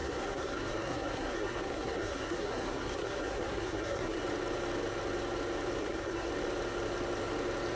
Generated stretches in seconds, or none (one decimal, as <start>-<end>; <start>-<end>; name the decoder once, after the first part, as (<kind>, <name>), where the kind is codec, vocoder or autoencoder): 0.0-4.2 (codec, SNAC); 5.8-6.3